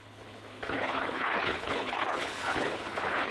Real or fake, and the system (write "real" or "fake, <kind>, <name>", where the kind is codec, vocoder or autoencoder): fake, codec, HILCodec